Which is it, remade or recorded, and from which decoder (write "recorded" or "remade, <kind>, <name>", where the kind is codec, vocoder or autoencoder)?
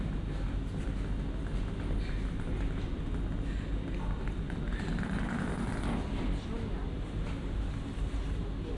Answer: recorded